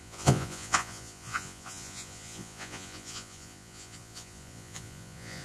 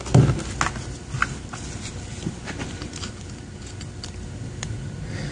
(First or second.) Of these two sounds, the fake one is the first